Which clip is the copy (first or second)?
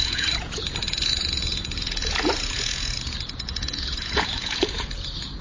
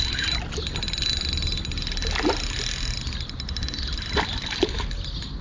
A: first